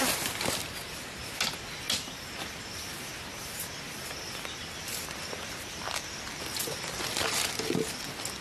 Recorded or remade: recorded